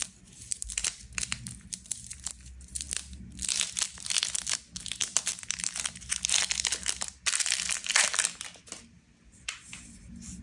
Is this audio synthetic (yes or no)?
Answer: no